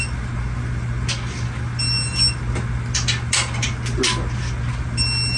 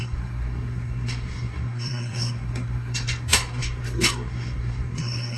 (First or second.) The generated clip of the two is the second